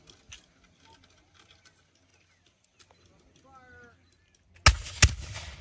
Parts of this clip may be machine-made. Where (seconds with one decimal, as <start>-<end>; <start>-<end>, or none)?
none